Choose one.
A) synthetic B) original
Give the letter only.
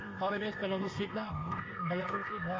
A